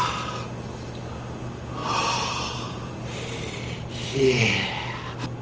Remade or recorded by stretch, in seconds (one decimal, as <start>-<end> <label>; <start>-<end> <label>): 0.0-1.8 recorded; 1.8-4.7 remade; 4.7-5.4 recorded